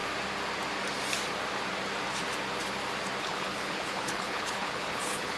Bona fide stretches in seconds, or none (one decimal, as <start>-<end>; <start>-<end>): 0.0-3.2